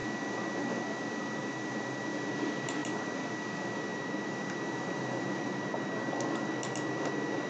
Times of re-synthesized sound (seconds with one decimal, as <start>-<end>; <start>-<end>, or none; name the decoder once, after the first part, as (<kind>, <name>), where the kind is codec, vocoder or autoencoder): 1.4-2.0 (vocoder, BigVGAN v2); 2.8-3.3; 3.9-6.5